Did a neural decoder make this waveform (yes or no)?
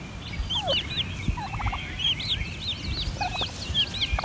no